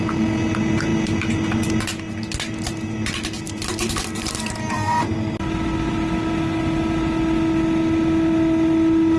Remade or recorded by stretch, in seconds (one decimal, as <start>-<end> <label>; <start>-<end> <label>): 0.0-9.2 recorded